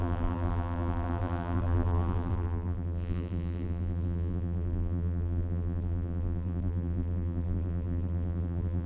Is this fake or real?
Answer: fake